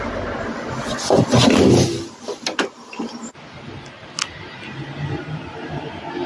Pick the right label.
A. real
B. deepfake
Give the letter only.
A